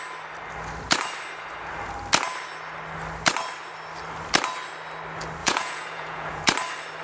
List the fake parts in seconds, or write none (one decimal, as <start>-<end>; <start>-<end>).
5.4-6.4